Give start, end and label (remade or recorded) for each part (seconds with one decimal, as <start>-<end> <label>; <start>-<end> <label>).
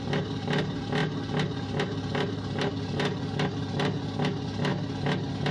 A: 0.0-5.5 recorded